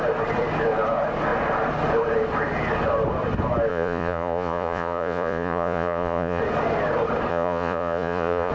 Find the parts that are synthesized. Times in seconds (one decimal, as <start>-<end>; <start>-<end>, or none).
3.7-6.4; 7.3-8.5